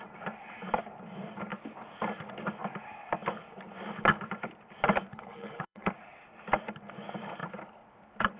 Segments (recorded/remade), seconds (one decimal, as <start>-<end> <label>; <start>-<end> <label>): 0.0-5.1 recorded; 5.1-5.9 remade; 5.9-8.4 recorded